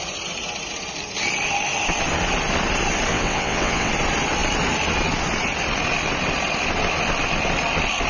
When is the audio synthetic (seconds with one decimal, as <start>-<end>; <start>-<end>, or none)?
3.1-3.9